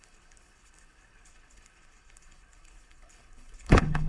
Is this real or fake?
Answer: fake